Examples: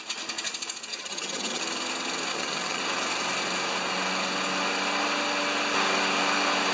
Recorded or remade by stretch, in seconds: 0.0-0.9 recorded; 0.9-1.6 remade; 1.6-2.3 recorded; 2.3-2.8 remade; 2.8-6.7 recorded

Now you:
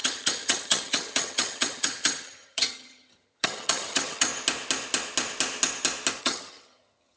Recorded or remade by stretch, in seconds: 0.0-4.3 remade; 4.3-6.2 recorded; 6.2-7.2 remade

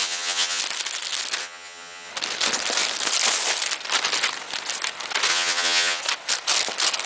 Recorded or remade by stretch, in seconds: 0.0-0.6 remade; 0.6-1.4 recorded; 1.4-2.1 remade; 2.1-5.3 recorded; 5.3-6.0 remade; 6.0-7.1 recorded